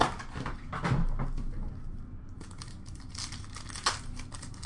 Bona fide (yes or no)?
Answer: yes